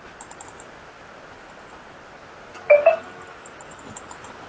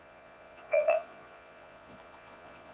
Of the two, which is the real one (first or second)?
first